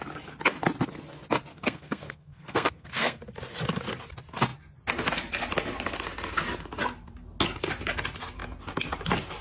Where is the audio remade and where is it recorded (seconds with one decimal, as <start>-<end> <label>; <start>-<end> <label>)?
0.0-1.5 recorded; 1.5-3.2 remade; 3.2-9.4 recorded